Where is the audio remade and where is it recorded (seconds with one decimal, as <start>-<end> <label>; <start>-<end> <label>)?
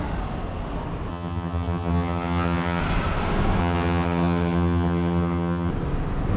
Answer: 0.0-1.1 recorded; 1.1-2.8 remade; 2.8-3.6 recorded; 3.6-5.7 remade; 5.7-6.4 recorded